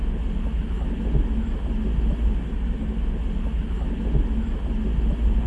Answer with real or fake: real